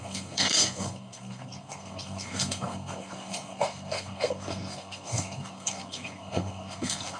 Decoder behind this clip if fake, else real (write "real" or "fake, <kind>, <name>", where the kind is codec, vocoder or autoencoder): fake, codec, SNAC